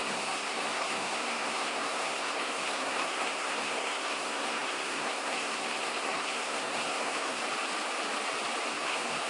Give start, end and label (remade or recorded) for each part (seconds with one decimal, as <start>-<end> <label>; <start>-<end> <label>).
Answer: 0.0-7.4 remade; 7.4-8.7 recorded; 8.7-9.3 remade